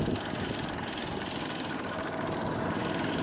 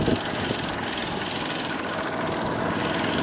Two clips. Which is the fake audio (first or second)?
first